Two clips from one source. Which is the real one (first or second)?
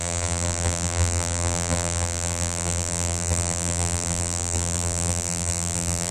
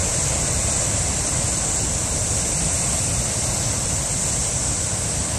second